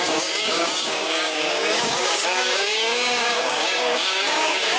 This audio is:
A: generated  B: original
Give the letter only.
A